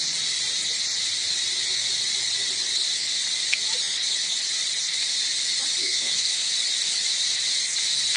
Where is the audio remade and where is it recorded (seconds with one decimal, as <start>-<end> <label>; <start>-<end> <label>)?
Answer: 0.0-5.8 recorded; 5.8-6.5 remade; 6.5-8.2 recorded

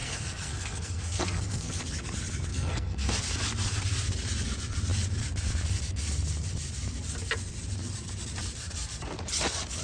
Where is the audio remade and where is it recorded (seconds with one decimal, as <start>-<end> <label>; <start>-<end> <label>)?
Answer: 0.0-1.8 remade; 1.8-2.5 recorded; 2.5-3.1 remade; 3.1-9.8 recorded

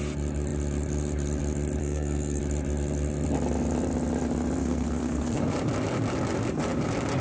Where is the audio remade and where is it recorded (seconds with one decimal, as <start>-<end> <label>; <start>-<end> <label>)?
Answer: 0.0-1.8 recorded; 1.8-2.4 remade; 2.4-4.6 recorded; 4.6-5.4 remade; 5.4-7.2 recorded

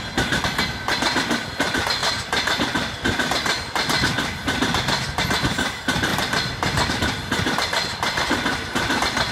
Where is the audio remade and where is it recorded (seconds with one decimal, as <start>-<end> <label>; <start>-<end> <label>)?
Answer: 0.0-9.3 recorded